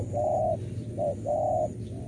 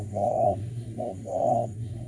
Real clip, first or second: first